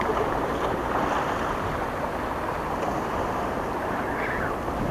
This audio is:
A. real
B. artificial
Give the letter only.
A